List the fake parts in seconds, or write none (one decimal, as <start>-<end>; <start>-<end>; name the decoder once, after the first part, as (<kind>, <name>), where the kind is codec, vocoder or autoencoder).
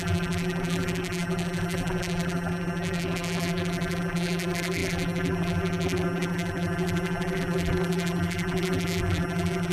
0.0-9.7 (vocoder, BigVGAN v2)